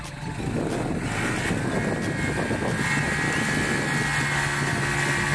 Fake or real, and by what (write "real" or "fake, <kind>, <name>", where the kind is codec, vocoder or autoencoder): real